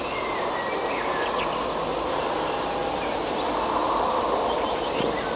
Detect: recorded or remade recorded